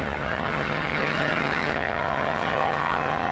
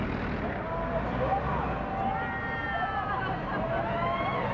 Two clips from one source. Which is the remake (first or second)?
first